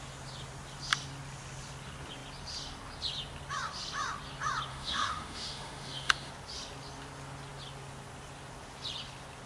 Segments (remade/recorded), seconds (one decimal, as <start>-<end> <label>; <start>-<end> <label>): 0.0-4.7 recorded; 4.7-6.3 remade; 6.3-9.5 recorded